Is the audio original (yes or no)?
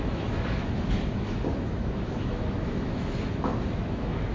no